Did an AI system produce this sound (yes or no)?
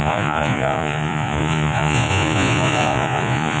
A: yes